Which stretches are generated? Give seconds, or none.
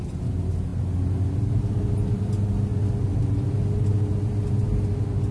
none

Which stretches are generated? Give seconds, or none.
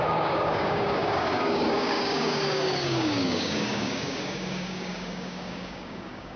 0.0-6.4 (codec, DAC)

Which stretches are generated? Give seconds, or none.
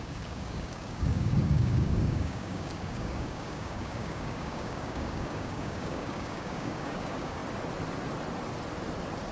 0.0-7.4 (codec, DAC)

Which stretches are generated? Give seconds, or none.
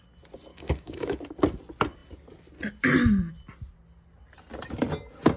0.5-1.2 (codec, DAC)